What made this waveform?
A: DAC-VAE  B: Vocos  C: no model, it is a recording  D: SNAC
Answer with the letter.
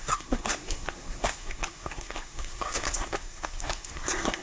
D